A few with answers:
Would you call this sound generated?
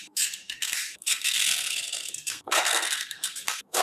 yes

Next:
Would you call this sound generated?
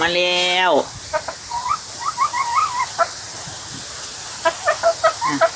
no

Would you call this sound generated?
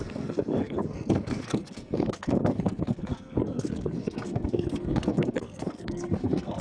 yes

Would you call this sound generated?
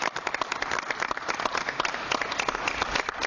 no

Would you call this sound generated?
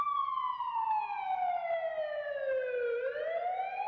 no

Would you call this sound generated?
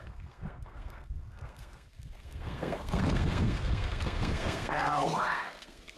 yes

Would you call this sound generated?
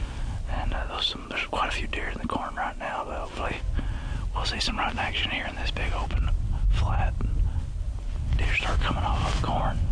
no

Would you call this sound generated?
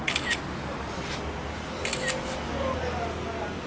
no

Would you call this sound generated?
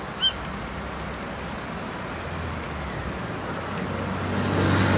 no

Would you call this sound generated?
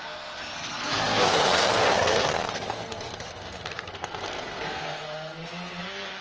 yes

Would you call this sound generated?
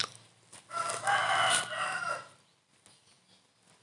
no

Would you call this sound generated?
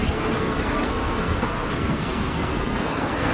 yes